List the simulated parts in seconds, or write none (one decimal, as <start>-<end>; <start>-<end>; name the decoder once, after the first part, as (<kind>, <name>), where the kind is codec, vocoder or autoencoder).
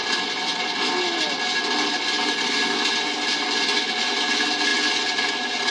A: none